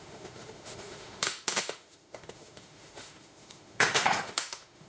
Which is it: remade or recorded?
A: remade